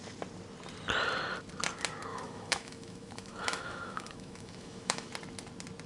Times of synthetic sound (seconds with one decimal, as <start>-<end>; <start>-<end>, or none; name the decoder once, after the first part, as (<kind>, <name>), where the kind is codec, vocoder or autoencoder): 2.1-5.1 (autoencoder, DAC-VAE)